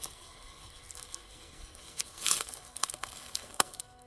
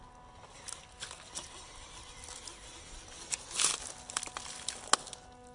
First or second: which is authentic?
second